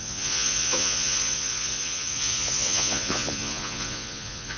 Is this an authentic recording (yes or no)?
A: no